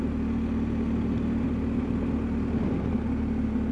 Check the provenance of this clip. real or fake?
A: real